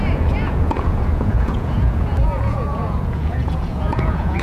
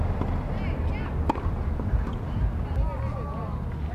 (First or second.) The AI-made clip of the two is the first